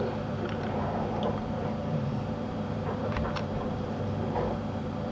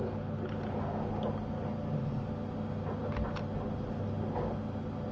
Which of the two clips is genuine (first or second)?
second